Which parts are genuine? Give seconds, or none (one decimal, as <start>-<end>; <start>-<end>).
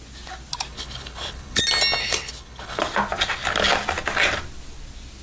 0.0-0.7; 1.6-2.0; 2.8-5.2